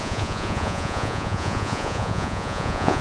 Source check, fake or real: fake